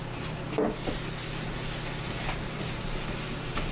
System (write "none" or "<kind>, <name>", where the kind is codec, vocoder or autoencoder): none